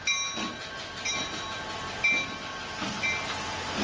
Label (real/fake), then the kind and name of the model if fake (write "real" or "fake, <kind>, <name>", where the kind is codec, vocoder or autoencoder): real